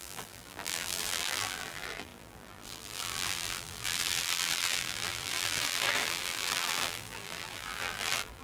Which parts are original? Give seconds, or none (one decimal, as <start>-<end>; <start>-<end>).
none